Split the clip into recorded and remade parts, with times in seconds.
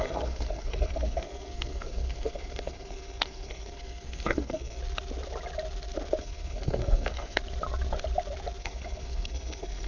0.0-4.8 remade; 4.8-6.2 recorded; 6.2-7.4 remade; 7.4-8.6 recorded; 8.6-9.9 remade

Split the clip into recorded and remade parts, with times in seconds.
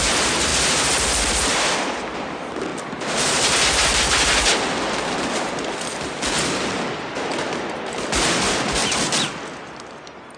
0.0-10.4 recorded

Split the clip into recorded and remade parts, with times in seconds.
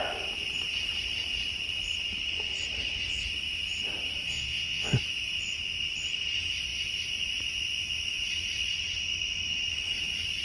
0.0-4.3 recorded; 4.3-4.9 remade; 4.9-10.4 recorded